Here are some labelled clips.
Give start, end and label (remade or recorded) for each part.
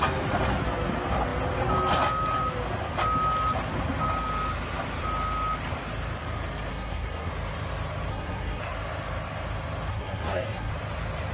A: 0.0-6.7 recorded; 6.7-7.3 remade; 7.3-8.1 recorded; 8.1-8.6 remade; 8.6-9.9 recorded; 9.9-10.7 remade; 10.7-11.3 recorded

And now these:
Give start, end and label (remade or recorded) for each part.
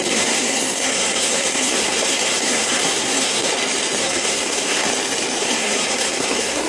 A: 0.0-3.5 remade; 3.5-4.0 recorded; 4.0-4.9 remade; 4.9-5.4 recorded; 5.4-6.7 remade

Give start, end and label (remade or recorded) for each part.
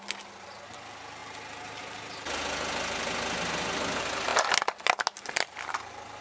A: 0.0-6.2 recorded